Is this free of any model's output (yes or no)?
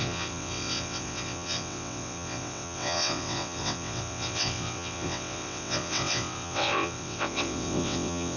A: no